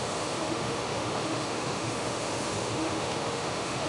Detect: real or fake fake